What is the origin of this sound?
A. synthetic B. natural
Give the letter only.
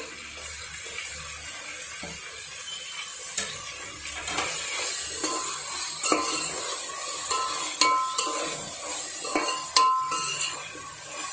B